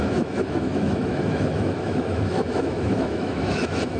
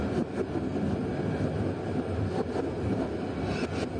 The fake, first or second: first